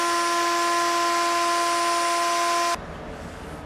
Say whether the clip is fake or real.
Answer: real